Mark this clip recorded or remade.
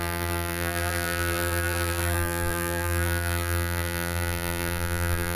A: remade